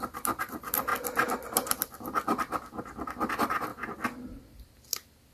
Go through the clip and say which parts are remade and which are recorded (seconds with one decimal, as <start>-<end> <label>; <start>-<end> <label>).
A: 0.0-0.9 remade; 0.9-3.3 recorded; 3.3-3.7 remade; 3.7-5.3 recorded